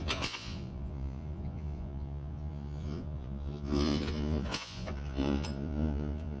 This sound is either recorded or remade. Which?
remade